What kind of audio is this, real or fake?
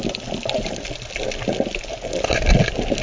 real